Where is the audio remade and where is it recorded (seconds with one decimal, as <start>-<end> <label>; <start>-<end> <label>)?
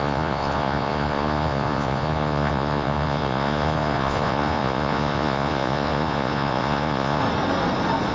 0.0-7.2 remade; 7.2-8.1 recorded